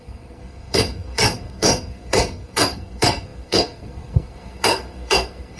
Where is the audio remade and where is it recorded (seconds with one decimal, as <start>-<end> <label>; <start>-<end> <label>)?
0.0-5.6 remade